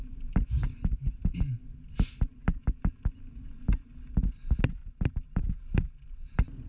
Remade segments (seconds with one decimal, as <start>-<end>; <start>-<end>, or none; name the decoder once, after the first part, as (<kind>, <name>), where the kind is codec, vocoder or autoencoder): 4.8-5.8 (vocoder, BigVGAN v2)